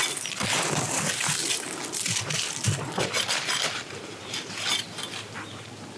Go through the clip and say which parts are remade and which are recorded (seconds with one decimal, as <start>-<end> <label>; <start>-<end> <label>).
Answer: 0.0-1.4 recorded; 1.4-4.9 remade; 4.9-6.0 recorded